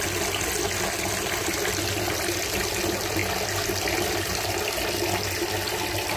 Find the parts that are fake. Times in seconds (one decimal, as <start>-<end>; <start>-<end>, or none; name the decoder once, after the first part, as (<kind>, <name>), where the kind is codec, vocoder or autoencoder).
none